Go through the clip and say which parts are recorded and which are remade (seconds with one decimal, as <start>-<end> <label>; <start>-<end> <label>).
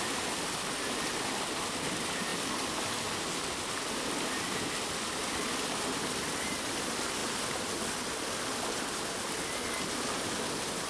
0.0-2.3 remade; 2.3-3.4 recorded; 3.4-10.9 remade